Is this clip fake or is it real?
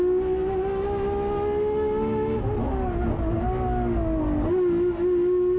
real